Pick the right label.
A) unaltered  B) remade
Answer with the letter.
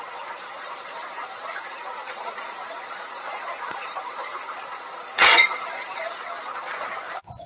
B